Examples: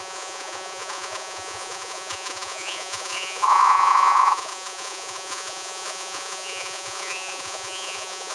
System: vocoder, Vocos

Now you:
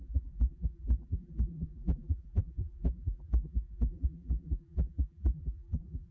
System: vocoder, BigVGAN v2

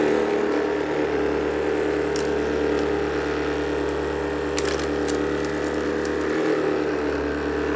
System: none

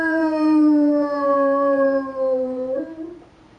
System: vocoder, BigVGAN v2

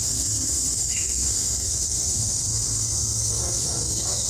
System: codec, SNAC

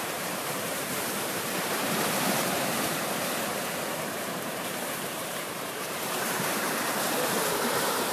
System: vocoder, BigVGAN v2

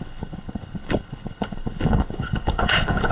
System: codec, HILCodec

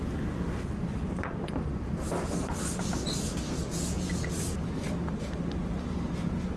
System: none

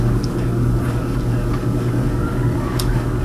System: codec, DAC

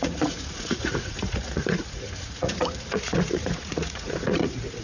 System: vocoder, Vocos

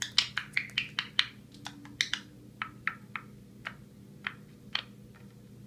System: none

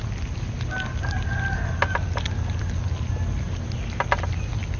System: none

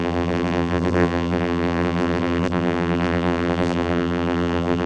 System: vocoder, BigVGAN v2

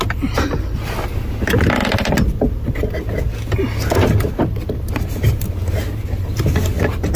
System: none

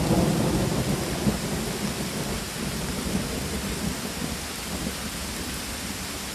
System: none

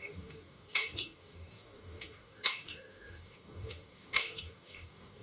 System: codec, DAC